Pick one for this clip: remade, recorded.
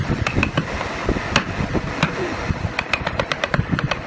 recorded